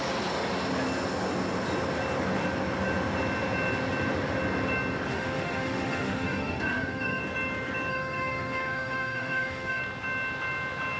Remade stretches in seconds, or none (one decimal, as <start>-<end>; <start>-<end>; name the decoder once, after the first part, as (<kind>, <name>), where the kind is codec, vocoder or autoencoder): 5.1-7.2 (autoencoder, DAC-VAE); 7.9-9.8